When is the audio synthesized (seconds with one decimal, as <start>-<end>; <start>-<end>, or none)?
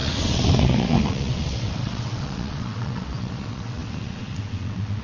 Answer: 0.0-5.0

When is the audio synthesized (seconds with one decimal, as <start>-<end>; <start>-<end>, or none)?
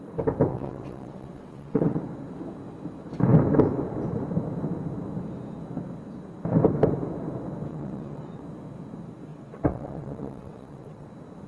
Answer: 0.5-2.0; 7.7-8.4; 9.3-11.1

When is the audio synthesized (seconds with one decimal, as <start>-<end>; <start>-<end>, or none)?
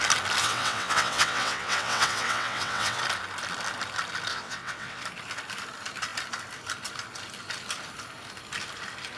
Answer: 0.4-3.0; 4.3-5.0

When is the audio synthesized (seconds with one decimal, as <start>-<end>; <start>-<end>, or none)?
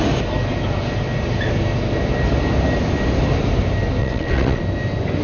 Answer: 4.0-4.6